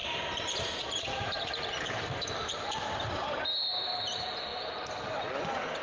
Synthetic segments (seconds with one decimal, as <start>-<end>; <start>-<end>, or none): 0.0-3.5